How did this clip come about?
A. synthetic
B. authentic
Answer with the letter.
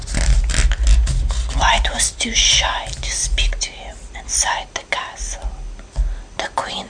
B